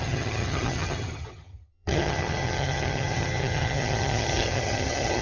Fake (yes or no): yes